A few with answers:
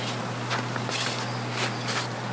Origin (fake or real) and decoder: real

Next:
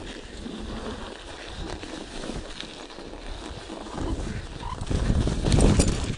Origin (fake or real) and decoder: real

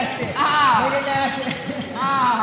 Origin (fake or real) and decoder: real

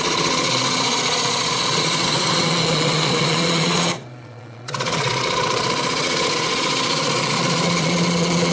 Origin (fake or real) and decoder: fake, vocoder, Vocos